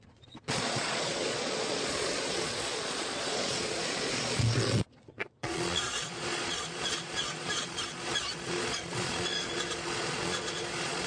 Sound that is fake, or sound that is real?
fake